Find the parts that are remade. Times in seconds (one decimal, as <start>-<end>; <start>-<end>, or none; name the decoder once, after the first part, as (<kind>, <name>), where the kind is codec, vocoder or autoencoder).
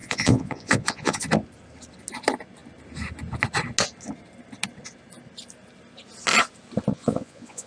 0.0-1.2 (vocoder, Vocos); 6.9-7.7